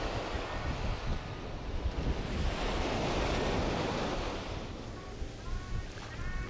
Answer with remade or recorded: recorded